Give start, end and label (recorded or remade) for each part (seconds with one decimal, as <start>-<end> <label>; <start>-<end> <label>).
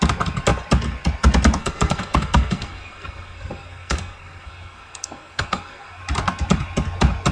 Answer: 0.0-1.6 recorded; 1.6-6.0 remade; 6.0-7.3 recorded